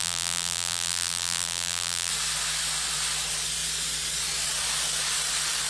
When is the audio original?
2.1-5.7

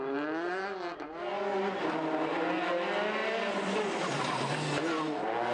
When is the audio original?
0.0-5.5

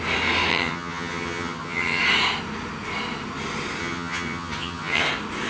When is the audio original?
0.0-0.5; 2.0-3.8; 5.0-5.5

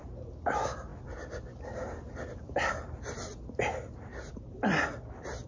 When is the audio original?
0.0-5.5

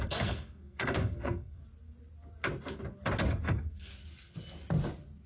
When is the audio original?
1.6-3.3; 3.9-5.3

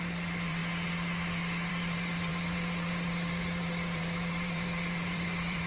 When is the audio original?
0.6-1.7